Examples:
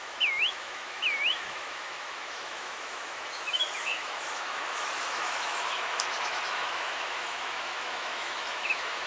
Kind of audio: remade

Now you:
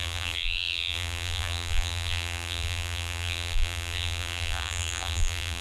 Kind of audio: remade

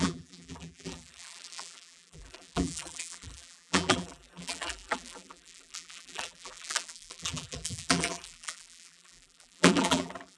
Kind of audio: remade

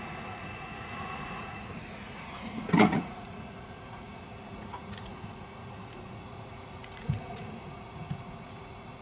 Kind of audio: remade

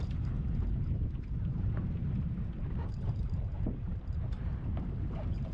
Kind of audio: remade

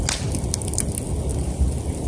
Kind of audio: recorded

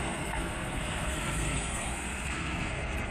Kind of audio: remade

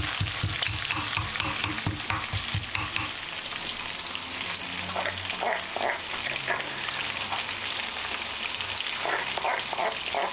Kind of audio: recorded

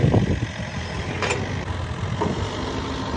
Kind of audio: recorded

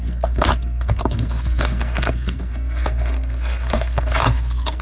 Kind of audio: remade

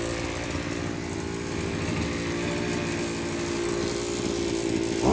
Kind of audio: recorded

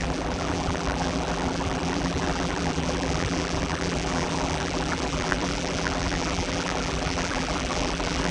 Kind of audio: remade